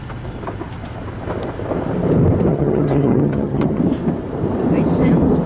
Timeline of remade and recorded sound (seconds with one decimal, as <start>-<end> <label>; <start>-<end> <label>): 0.0-2.5 recorded; 2.5-3.8 remade; 3.8-5.5 recorded